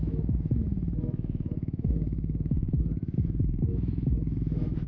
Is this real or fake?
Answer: fake